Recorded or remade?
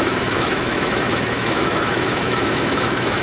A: remade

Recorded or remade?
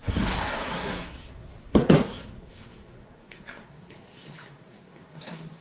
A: remade